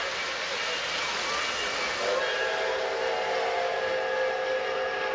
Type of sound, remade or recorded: recorded